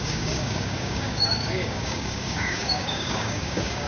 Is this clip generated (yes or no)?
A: yes